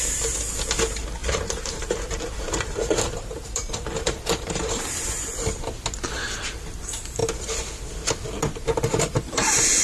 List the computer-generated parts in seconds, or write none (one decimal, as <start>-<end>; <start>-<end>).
1.2-5.2